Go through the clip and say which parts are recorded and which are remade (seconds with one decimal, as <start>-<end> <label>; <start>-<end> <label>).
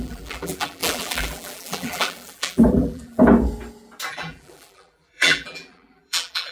0.0-3.2 remade; 3.2-4.1 recorded; 4.1-6.5 remade